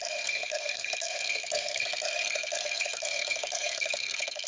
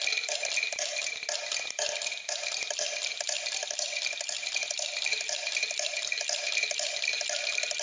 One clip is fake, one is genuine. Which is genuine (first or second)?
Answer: second